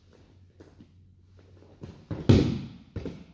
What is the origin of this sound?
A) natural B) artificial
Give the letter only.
A